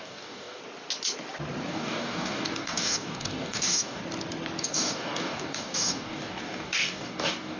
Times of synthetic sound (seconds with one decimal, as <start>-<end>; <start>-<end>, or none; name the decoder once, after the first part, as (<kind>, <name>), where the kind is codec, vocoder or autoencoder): 0.0-0.6 (codec, DAC); 1.7-4.0; 4.6-7.6